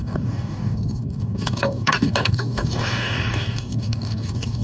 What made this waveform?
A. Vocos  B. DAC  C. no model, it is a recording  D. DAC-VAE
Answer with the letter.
B